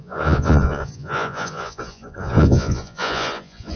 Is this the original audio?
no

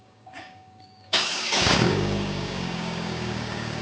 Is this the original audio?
no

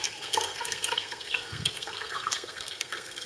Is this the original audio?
no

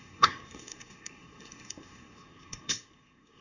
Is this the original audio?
no